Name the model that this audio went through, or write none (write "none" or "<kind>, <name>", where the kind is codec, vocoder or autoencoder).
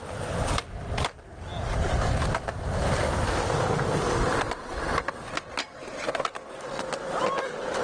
none